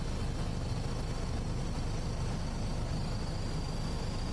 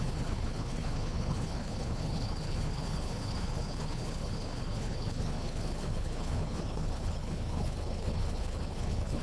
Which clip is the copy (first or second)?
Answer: second